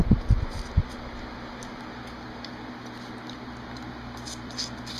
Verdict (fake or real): real